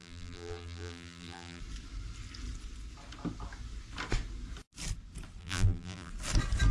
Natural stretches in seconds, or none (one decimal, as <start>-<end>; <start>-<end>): 1.6-5.4; 6.1-6.7